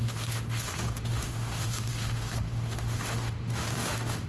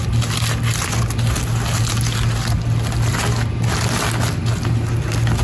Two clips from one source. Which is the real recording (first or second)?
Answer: second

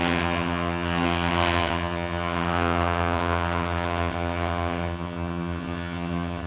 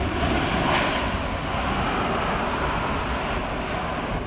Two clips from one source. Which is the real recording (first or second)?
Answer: second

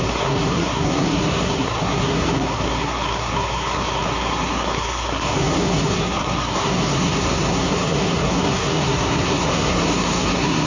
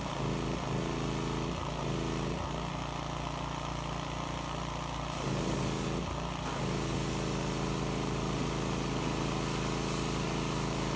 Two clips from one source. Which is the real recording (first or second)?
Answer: second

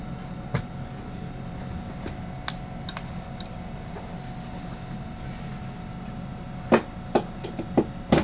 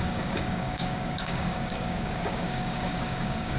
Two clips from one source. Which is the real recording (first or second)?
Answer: first